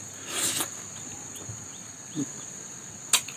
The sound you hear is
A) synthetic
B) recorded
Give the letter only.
B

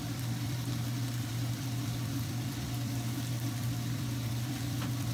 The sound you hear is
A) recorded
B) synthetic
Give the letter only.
B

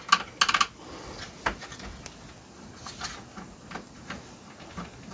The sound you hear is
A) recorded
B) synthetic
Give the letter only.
A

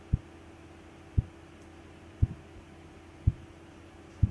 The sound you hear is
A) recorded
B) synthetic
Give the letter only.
A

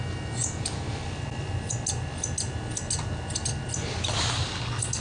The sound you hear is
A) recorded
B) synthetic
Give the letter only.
A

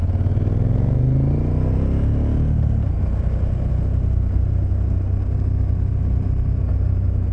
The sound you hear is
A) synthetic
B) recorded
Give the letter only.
B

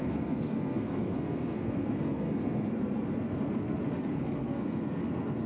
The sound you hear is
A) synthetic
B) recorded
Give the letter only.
A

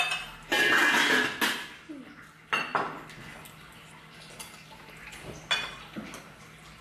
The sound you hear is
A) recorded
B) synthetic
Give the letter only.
A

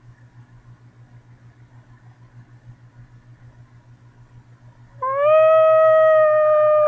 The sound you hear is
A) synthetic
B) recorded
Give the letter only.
B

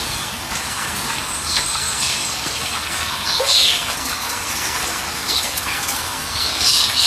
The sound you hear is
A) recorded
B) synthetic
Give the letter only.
B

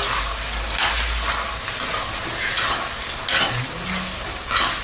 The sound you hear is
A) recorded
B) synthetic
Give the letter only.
A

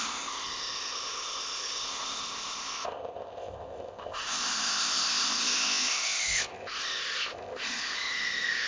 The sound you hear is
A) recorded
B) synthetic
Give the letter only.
B